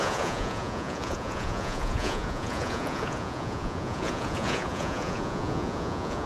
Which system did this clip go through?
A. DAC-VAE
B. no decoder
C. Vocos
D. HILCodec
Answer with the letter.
C